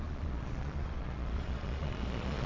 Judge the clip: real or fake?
fake